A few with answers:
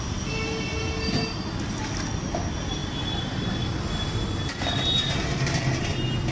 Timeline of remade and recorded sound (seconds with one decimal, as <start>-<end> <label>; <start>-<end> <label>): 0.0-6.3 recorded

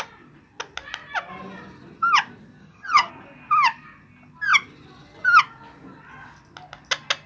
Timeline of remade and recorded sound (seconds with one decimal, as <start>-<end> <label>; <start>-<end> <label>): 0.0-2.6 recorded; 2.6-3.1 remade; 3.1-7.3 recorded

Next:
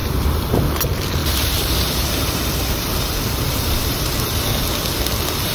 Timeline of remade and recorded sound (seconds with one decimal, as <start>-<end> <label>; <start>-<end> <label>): 0.0-0.6 remade; 0.6-1.2 recorded; 1.2-4.4 remade; 4.4-5.5 recorded